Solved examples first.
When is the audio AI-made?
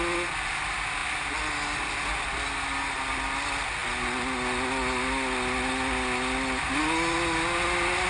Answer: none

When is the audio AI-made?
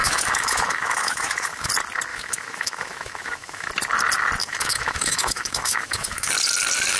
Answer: 0.0-1.7 (autoencoder, DAC-VAE); 2.1-3.7; 4.4-6.3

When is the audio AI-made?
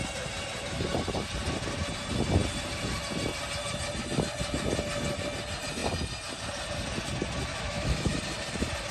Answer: 7.5-8.2 (autoencoder, DAC-VAE)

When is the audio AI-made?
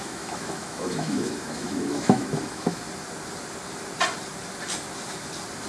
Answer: 0.0-2.8 (autoencoder, DAC-VAE)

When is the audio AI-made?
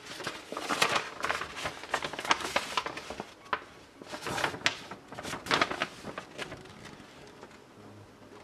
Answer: none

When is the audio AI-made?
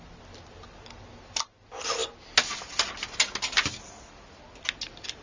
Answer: none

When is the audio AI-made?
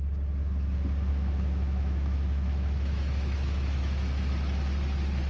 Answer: 1.1-4.3 (autoencoder, DAC-VAE)